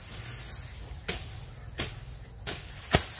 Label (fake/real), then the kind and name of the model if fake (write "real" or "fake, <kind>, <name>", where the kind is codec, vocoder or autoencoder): real